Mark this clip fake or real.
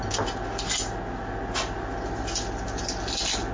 real